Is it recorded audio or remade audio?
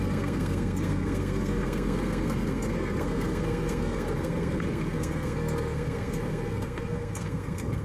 remade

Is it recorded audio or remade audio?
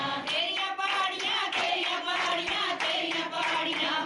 remade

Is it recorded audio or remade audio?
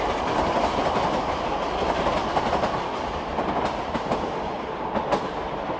recorded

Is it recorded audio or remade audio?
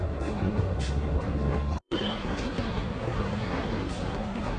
remade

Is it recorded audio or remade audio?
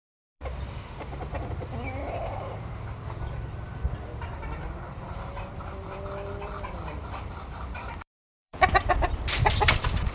remade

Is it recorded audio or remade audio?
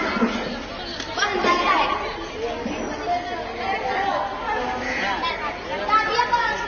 recorded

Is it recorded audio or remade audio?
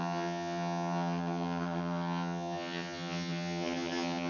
remade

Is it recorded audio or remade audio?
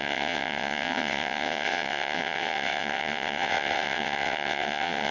remade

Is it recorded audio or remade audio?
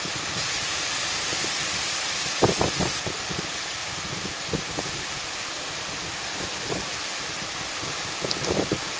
recorded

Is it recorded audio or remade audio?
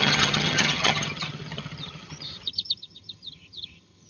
remade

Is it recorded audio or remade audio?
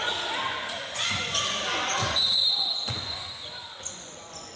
remade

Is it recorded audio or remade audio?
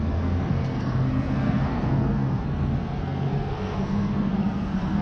remade